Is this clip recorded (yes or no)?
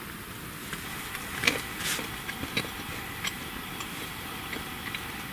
yes